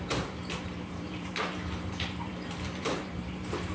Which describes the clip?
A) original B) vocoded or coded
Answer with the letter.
B